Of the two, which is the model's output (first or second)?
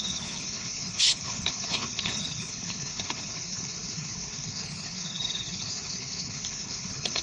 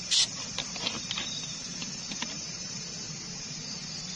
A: first